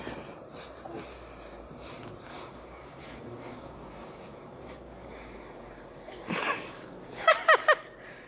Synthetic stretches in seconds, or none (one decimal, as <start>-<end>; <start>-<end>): 2.3-7.3